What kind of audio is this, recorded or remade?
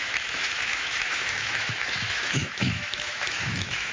remade